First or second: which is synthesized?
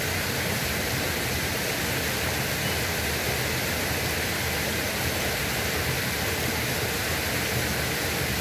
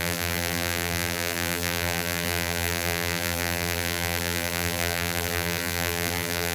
second